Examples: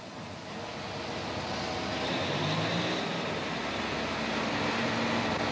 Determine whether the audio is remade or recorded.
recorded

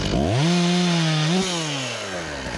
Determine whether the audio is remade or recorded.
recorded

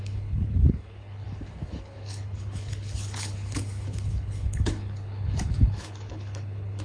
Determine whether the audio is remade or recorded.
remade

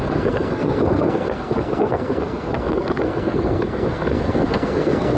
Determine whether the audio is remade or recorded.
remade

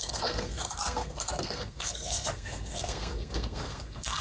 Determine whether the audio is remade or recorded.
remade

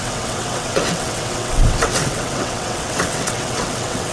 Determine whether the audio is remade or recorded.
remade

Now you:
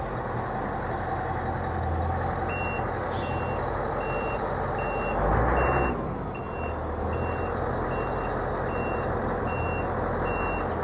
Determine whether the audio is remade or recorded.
recorded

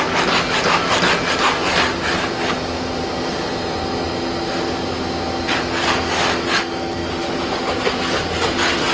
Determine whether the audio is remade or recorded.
recorded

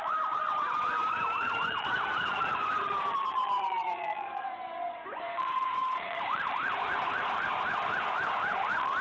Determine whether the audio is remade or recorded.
remade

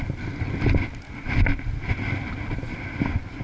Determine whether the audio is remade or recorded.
recorded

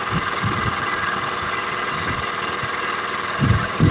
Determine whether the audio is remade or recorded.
remade